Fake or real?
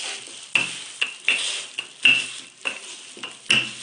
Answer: real